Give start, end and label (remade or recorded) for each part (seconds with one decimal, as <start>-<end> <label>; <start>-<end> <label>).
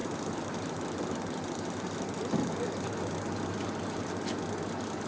0.0-3.1 remade; 3.1-5.1 recorded